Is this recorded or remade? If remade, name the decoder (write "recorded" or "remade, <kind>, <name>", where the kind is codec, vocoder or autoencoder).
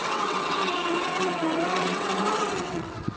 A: remade, vocoder, WaveNeXt